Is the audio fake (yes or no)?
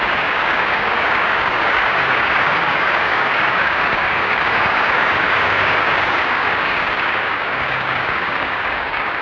yes